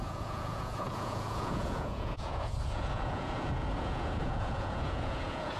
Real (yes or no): no